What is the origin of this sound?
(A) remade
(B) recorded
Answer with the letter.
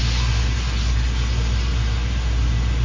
B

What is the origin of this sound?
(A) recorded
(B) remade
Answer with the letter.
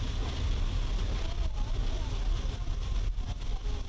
A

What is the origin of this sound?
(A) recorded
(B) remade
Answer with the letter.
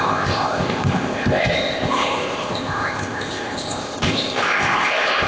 B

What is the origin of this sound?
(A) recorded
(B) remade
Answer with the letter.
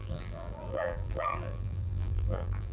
B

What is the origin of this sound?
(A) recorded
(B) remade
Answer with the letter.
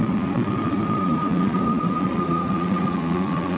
B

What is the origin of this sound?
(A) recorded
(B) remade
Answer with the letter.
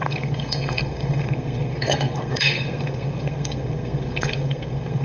B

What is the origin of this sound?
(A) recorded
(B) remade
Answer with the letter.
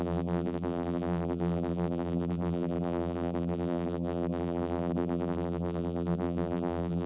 B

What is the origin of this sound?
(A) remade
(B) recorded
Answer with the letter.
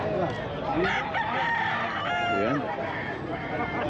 B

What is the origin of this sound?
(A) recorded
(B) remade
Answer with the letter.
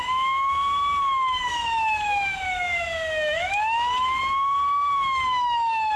B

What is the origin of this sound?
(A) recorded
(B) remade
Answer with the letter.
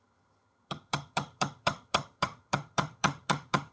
B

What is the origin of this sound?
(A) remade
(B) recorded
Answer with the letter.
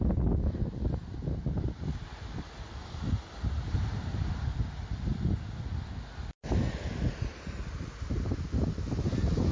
B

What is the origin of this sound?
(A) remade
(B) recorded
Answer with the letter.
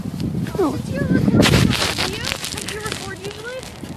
B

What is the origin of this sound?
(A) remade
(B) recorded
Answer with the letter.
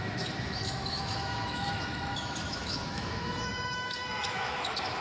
A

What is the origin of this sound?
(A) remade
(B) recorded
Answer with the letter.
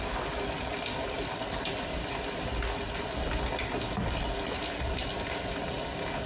B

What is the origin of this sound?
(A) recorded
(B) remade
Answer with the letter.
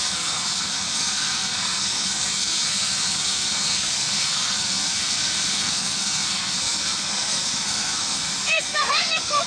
B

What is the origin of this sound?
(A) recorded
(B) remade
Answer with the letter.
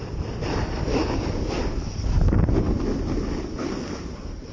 A